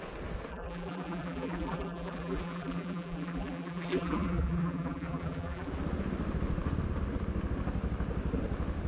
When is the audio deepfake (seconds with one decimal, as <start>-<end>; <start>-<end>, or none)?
0.5-5.7